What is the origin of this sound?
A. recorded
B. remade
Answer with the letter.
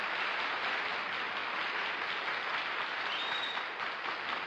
A